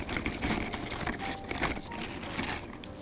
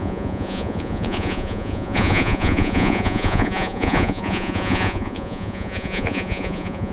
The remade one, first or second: second